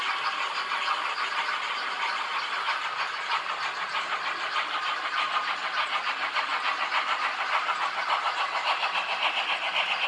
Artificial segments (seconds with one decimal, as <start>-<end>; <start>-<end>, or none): 6.5-7.8

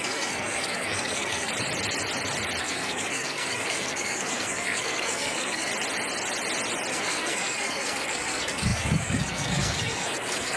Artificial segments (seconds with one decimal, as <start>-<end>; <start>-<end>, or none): 0.0-1.5; 2.6-5.7; 6.9-10.6

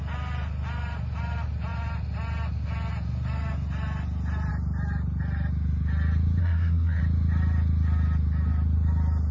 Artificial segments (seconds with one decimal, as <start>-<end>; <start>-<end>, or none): 6.4-7.0